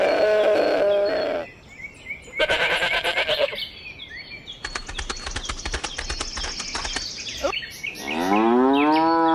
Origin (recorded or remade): recorded